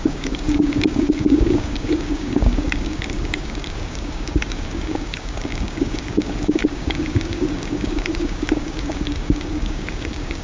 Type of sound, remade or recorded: remade